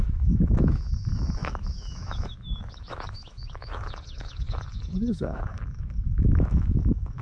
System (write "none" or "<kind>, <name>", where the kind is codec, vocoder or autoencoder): autoencoder, DAC-VAE